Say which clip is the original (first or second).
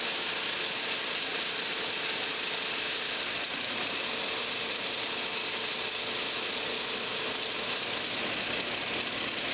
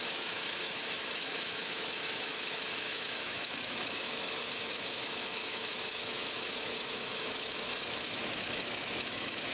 first